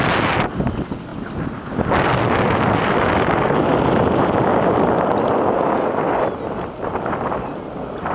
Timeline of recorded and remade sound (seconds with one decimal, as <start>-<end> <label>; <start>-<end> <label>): 0.0-8.1 recorded